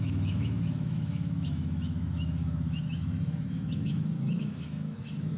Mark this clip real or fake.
fake